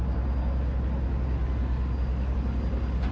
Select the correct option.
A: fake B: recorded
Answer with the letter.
B